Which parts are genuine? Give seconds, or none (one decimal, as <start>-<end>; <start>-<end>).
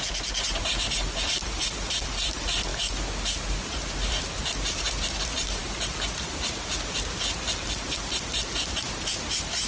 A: 2.7-3.5